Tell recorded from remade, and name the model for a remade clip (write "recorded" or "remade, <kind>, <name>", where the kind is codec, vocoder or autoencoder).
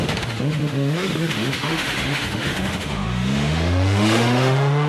remade, autoencoder, DAC-VAE